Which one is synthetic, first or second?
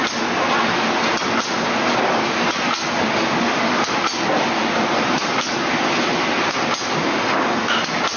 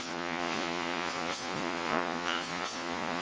second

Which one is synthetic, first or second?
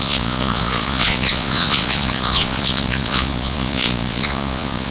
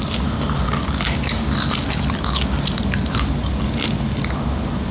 first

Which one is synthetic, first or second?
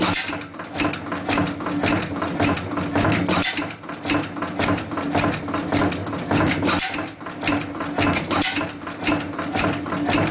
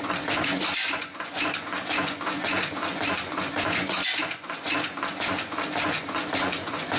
second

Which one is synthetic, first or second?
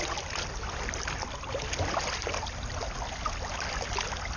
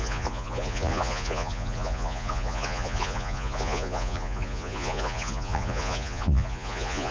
second